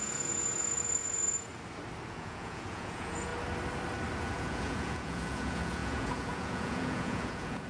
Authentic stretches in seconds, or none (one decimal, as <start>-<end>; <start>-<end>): 1.5-2.1; 3.3-4.2